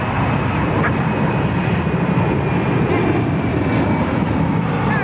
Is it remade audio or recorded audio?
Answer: recorded